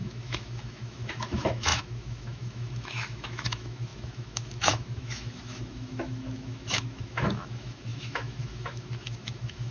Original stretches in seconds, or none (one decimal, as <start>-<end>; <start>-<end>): none